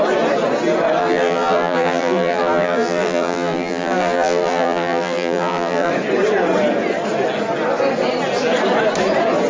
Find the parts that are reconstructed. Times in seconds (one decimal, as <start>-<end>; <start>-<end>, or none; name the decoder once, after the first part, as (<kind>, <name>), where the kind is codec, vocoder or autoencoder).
1.0-5.9 (vocoder, BigVGAN v2)